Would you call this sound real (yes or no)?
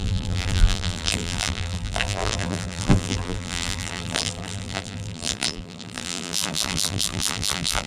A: no